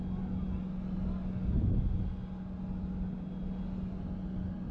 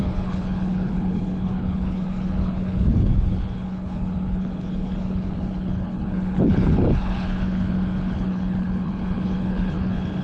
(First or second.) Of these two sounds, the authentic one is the first